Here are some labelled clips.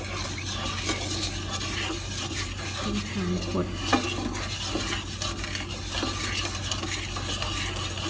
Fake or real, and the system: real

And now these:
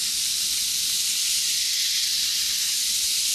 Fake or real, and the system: real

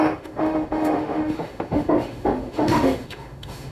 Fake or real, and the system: fake, autoencoder, DAC-VAE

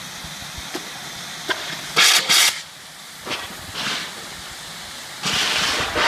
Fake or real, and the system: real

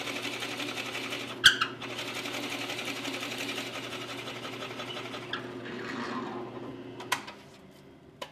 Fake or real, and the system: real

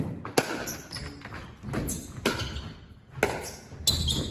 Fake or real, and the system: real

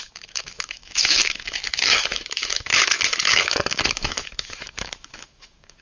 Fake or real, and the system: fake, autoencoder, DAC-VAE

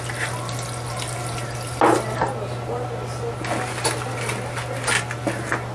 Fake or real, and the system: real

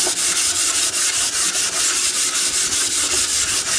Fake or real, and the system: real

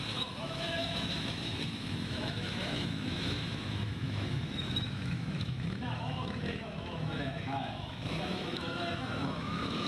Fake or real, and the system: fake, autoencoder, DAC-VAE